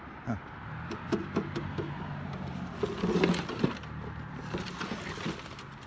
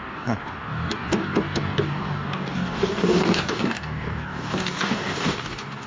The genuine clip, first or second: first